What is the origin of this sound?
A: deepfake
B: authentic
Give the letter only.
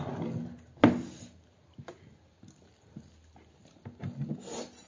B